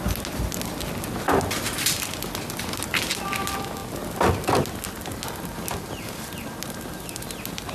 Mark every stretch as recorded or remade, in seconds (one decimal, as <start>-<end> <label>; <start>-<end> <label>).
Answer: 0.0-7.7 recorded